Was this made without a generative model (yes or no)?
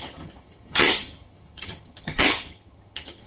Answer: no